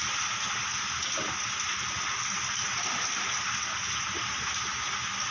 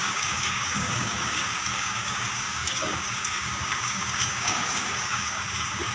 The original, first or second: first